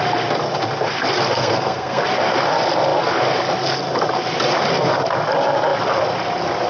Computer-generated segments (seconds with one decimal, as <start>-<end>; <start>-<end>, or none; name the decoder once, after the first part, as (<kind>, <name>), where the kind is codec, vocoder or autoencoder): 1.3-2.0 (codec, SNAC)